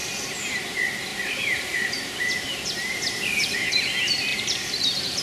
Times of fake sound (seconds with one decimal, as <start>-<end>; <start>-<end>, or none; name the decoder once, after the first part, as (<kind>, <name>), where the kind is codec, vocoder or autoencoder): 0.0-0.5 (vocoder, BigVGAN v2); 1.1-3.7; 4.3-5.2